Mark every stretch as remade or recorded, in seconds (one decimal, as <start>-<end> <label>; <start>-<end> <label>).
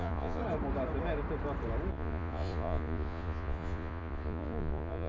0.0-0.4 remade; 0.4-1.9 recorded; 1.9-5.1 remade